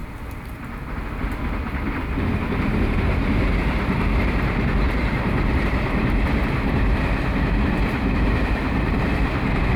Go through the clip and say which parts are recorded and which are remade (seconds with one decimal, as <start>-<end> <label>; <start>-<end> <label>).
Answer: 0.0-2.1 recorded; 2.1-3.2 remade; 3.2-4.2 recorded; 4.2-9.8 remade